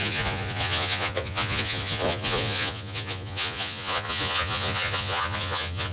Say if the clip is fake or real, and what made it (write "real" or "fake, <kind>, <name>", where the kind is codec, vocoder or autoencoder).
fake, vocoder, Vocos